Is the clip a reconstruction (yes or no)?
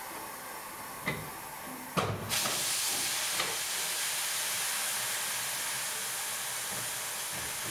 no